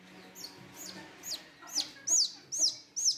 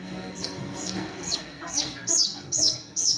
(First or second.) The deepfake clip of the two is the second